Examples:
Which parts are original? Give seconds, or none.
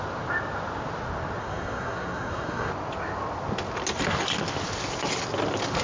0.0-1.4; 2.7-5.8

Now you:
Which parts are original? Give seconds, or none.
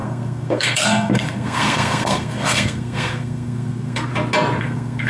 4.1-4.6